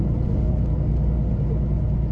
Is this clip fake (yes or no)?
no